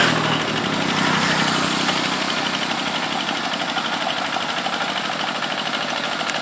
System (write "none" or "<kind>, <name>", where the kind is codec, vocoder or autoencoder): none